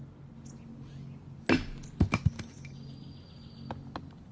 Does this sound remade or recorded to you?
recorded